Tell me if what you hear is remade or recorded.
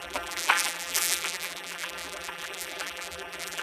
remade